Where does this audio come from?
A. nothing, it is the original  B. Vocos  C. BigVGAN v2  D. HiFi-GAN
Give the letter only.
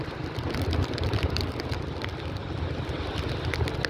A